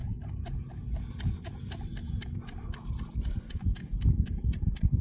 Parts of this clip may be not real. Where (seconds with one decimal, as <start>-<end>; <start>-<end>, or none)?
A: none